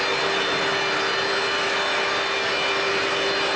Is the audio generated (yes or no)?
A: no